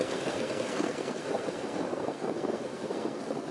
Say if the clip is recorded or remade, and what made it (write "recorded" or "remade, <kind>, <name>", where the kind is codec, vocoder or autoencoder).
remade, codec, SNAC